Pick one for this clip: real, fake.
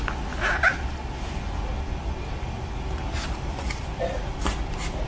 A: real